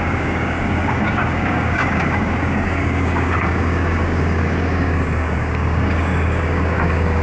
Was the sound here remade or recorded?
remade